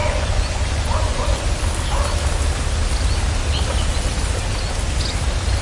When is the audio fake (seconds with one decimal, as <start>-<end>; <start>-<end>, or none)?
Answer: 0.0-1.5